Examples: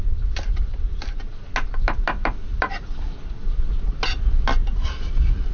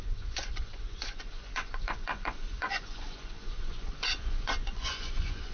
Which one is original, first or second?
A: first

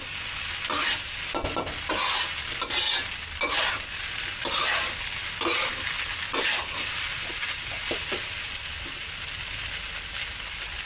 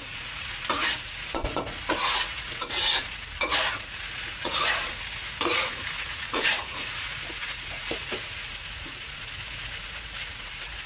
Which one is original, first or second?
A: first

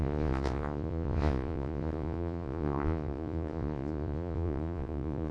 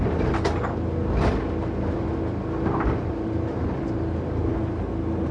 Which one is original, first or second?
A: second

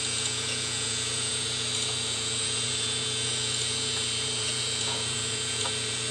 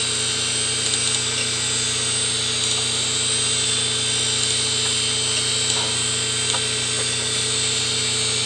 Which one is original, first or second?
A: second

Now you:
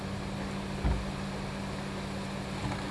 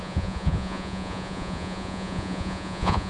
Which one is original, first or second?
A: first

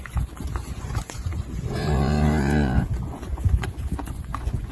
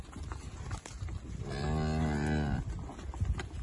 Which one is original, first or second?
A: second